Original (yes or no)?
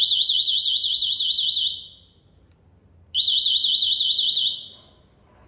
yes